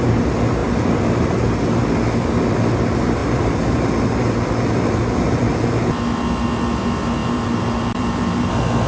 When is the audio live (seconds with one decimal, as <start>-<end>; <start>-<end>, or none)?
0.0-3.2; 4.3-7.2; 8.5-8.9